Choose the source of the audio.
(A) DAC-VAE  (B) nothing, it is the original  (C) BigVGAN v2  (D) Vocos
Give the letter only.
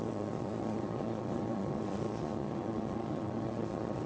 D